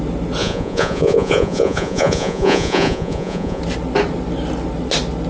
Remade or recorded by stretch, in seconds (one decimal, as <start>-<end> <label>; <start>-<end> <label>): 0.0-0.4 recorded; 0.4-3.6 remade; 3.6-5.3 recorded